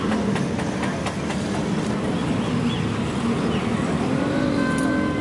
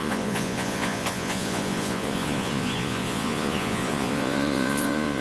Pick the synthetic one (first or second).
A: second